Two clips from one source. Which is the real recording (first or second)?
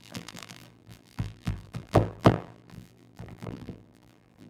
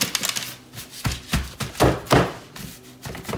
second